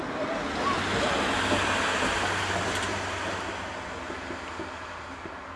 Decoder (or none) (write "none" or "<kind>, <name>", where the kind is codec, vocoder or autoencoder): none